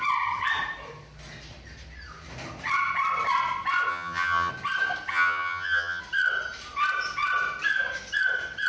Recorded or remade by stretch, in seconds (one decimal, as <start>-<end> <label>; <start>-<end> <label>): 0.0-3.9 recorded; 3.9-4.5 remade; 4.5-5.1 recorded; 5.1-6.0 remade; 6.0-8.7 recorded